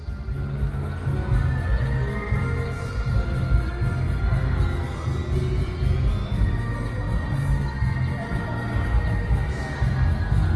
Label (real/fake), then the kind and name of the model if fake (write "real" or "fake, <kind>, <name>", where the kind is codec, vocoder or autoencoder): real